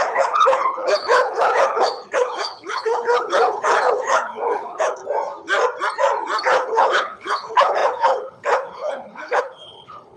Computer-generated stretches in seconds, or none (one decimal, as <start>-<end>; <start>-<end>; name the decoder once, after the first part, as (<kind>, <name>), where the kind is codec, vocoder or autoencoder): 0.0-5.0 (codec, HILCodec); 6.4-10.2